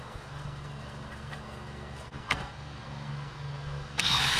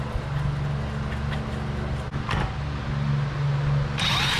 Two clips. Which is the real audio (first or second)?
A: second